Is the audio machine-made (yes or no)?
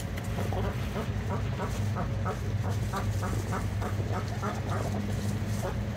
no